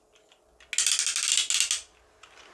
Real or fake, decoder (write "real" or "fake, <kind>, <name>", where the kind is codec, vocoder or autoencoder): real